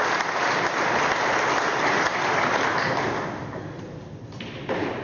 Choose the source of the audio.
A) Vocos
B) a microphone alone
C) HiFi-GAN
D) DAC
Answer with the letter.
B